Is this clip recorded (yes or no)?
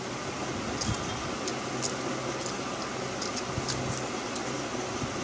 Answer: yes